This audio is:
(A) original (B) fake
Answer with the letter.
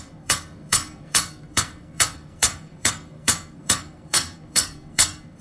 B